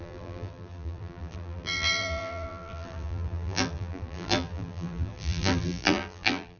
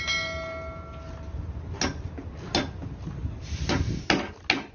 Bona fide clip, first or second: second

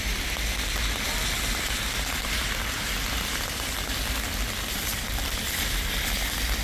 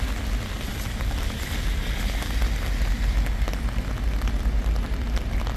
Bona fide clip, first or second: second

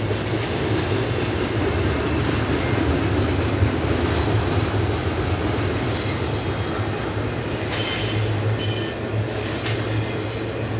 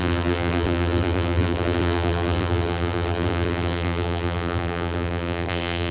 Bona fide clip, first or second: first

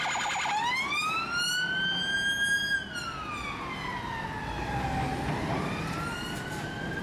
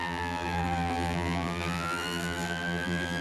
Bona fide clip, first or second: first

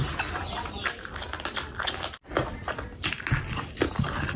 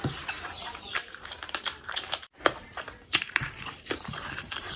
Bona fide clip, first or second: first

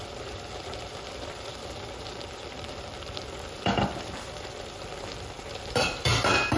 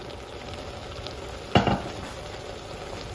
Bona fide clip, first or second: second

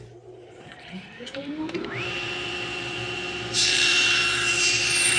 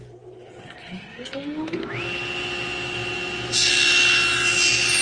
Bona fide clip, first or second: second